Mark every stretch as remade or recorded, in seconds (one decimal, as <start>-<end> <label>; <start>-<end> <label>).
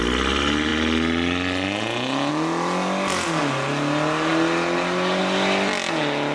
0.0-6.3 recorded